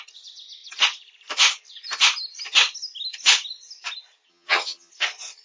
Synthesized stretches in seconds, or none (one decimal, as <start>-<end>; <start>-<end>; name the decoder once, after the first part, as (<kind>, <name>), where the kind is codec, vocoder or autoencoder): 4.3-4.9 (vocoder, HiFi-GAN)

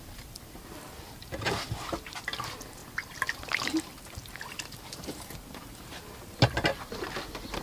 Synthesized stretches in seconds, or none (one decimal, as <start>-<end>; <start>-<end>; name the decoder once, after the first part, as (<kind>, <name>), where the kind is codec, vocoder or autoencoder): 0.0-2.8 (vocoder, BigVGAN v2); 6.2-7.6

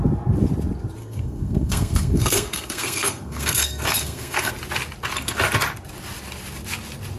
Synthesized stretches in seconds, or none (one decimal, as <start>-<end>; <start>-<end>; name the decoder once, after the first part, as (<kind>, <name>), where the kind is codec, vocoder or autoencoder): 1.0-4.5 (codec, SNAC)

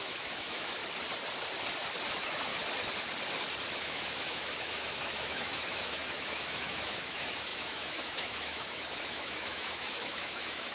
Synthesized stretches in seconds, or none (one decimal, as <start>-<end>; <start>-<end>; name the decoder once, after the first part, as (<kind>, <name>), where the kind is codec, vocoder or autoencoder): 0.0-0.8 (autoencoder, DAC-VAE); 2.1-2.5; 3.7-10.7

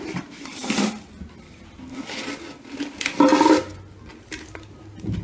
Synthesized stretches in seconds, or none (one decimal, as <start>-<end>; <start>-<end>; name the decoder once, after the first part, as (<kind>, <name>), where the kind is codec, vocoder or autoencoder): none

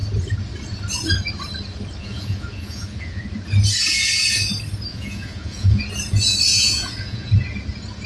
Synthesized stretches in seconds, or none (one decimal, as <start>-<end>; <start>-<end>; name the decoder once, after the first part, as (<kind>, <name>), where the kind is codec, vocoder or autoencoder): 2.0-3.2 (vocoder, Vocos); 4.9-5.8; 6.5-7.3

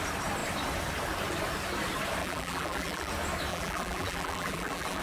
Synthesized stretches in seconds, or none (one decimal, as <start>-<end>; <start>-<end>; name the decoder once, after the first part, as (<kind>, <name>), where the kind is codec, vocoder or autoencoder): 2.2-3.1 (vocoder, BigVGAN v2); 3.5-5.0

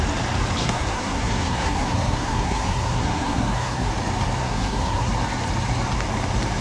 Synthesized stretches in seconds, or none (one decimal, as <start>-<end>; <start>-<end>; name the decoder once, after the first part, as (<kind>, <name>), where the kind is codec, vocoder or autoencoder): 0.6-3.9 (codec, SNAC); 4.4-5.1